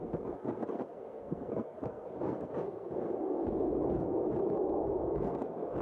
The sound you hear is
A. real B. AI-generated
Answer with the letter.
B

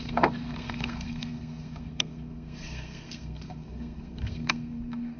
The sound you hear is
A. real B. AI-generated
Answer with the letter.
B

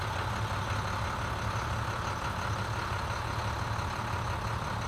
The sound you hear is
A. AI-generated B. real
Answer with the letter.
B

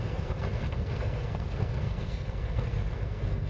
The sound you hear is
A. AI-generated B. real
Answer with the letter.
A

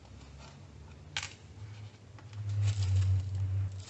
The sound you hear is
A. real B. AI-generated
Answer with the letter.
A